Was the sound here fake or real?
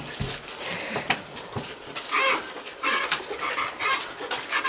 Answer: real